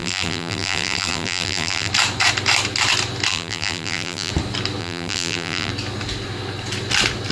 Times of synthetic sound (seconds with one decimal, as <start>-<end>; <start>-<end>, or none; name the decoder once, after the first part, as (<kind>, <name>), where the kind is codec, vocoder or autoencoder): 0.0-1.9 (vocoder, BigVGAN v2); 3.3-4.3; 4.8-5.7